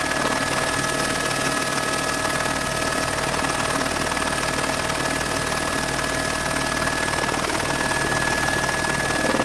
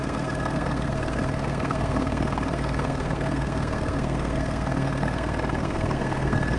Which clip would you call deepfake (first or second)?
second